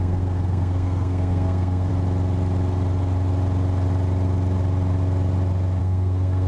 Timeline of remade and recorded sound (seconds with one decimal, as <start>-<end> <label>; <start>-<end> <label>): 0.0-1.9 remade; 1.9-5.8 recorded; 5.8-6.5 remade